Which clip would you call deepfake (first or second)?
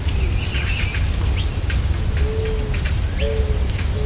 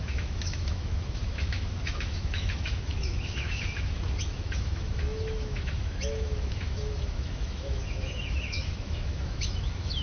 second